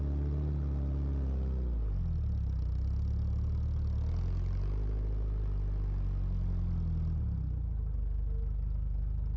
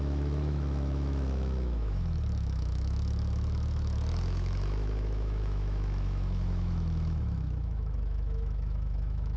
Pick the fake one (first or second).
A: second